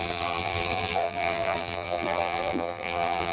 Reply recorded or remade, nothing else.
remade